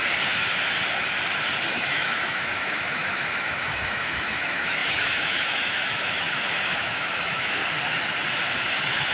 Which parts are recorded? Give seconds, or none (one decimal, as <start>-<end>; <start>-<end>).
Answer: 0.0-1.7; 7.6-8.6